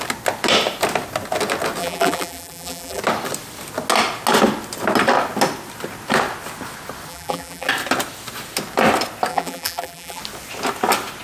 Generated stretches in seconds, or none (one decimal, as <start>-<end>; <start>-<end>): 1.8-3.0; 7.1-7.7; 9.3-10.2